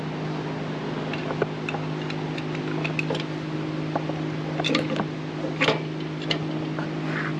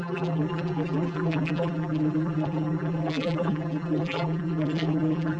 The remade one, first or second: second